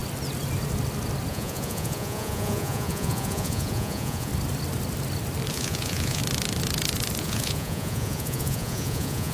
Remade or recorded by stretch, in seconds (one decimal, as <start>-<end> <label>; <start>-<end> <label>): 0.0-1.3 recorded; 1.3-4.3 remade; 4.3-5.5 recorded; 5.5-6.2 remade; 6.2-7.2 recorded; 7.2-9.3 remade